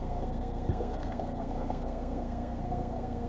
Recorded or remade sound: remade